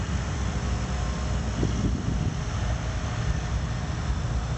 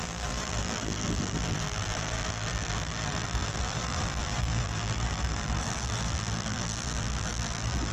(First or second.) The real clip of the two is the first